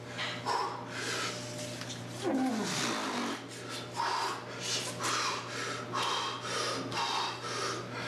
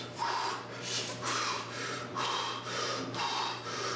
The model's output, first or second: second